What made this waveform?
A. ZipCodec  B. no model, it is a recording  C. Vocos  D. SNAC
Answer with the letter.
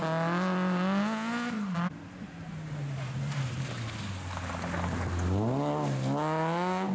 B